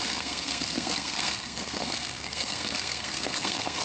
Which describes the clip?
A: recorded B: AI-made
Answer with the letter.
B